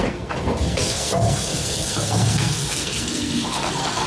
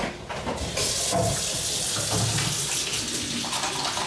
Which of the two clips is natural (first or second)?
second